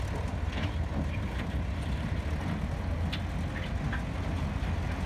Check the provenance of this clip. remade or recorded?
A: recorded